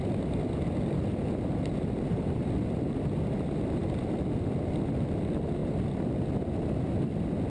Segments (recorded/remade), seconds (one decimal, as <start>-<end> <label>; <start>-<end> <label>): 0.0-7.5 recorded

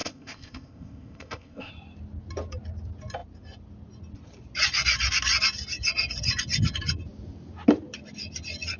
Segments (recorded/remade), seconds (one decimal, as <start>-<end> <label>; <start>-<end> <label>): 0.0-1.7 remade; 1.7-8.8 recorded